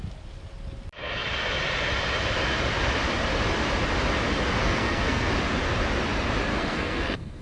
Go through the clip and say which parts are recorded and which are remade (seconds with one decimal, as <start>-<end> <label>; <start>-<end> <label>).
0.0-4.6 recorded; 4.6-5.3 remade; 5.3-6.5 recorded; 6.5-7.4 remade